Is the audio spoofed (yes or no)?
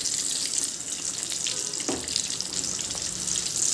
no